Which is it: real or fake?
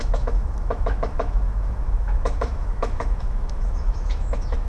fake